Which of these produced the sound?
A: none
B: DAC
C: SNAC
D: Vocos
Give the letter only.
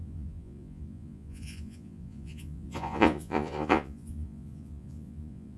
D